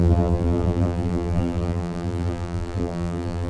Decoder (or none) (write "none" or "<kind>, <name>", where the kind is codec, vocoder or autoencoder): vocoder, BigVGAN v2